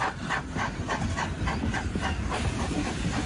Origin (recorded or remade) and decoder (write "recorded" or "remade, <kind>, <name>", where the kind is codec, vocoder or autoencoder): recorded